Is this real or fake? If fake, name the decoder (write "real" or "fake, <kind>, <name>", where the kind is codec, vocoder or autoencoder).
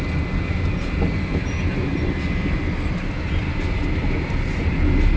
real